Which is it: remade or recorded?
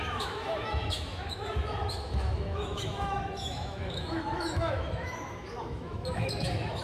remade